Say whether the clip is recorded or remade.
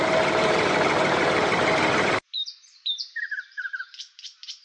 remade